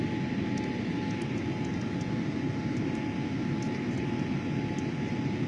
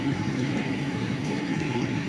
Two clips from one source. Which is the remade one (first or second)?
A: second